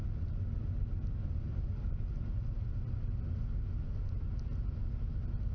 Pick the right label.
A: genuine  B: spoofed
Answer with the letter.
A